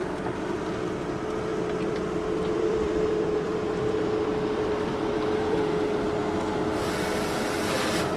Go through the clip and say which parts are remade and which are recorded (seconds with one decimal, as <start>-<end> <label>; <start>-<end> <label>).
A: 0.0-1.5 recorded; 1.5-5.6 remade; 5.6-8.2 recorded